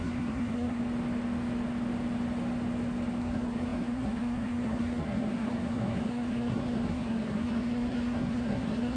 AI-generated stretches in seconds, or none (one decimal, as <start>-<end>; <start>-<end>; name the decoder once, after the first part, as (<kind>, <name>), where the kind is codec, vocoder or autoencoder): 0.0-0.8 (codec, SNAC); 3.2-9.0